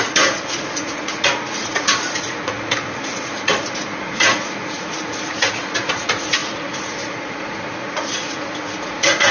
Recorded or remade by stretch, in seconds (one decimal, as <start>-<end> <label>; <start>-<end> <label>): 0.0-9.3 remade